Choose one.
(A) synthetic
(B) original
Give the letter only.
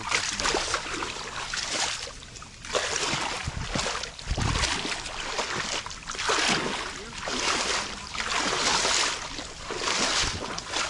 B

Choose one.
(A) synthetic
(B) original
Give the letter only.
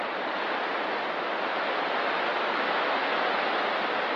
B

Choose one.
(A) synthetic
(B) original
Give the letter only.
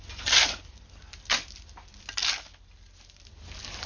B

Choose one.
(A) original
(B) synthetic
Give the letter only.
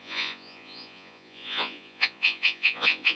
B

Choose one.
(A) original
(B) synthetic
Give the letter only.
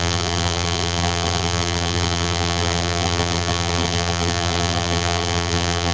B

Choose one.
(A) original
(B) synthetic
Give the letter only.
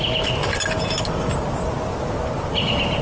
A